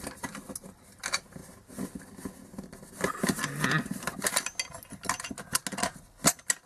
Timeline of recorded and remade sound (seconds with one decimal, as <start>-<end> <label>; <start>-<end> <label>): 0.0-6.7 recorded